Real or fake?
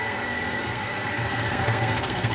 fake